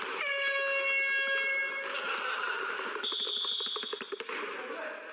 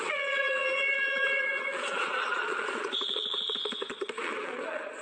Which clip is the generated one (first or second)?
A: second